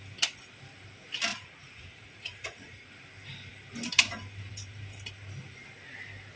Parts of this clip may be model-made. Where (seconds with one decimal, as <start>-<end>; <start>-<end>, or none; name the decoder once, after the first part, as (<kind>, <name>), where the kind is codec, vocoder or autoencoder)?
1.3-2.9 (vocoder, Vocos)